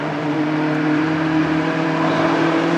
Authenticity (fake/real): fake